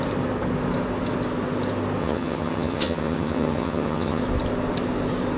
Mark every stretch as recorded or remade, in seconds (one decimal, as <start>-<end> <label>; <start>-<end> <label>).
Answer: 0.0-2.0 recorded; 2.0-4.2 remade; 4.2-5.4 recorded

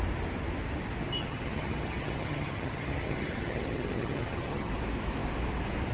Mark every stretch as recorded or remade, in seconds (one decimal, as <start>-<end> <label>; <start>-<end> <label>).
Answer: 0.0-1.2 recorded; 1.2-4.7 remade; 4.7-5.9 recorded

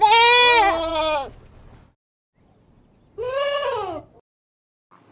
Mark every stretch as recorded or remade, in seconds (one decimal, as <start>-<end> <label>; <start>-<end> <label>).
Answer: 0.0-5.1 recorded

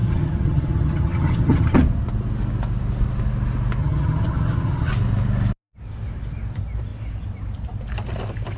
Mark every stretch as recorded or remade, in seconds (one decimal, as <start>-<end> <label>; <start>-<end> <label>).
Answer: 0.0-1.8 remade; 1.8-3.8 recorded; 3.8-4.9 remade; 4.9-8.6 recorded